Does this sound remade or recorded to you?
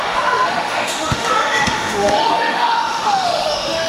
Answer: remade